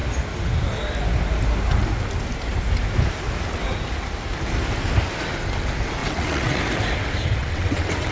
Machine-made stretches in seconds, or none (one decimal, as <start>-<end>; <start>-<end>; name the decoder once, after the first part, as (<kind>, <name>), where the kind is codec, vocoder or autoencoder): 6.0-6.6 (vocoder, WaveNeXt); 7.4-8.1